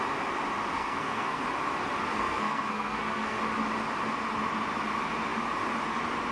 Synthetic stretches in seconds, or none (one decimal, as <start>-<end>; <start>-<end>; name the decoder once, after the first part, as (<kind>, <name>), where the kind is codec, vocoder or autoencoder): 0.7-1.4 (codec, SNAC); 2.0-3.4